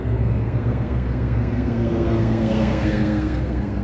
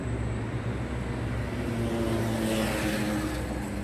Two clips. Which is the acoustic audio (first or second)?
second